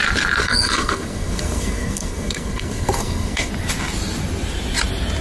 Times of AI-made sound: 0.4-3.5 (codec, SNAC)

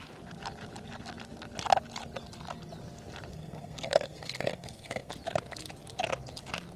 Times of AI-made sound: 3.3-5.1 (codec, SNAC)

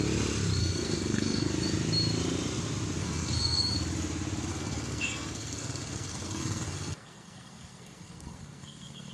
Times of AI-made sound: 0.6-1.5 (codec, SNAC); 3.0-3.7; 4.5-9.1

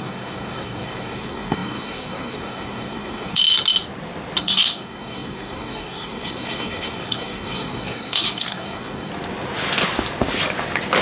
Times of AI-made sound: 0.0-3.4 (codec, SNAC); 4.4-9.1